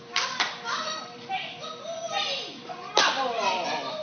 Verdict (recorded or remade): remade